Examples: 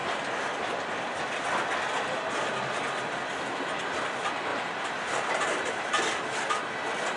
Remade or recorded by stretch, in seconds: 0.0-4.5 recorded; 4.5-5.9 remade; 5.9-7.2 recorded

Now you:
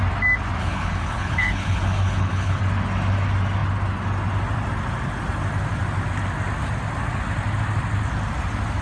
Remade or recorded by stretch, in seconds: 0.0-0.6 recorded; 0.6-2.6 remade; 2.6-8.8 recorded

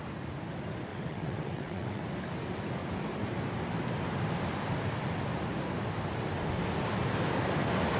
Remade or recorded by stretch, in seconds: 0.0-0.9 recorded; 0.9-2.0 remade; 2.0-8.0 recorded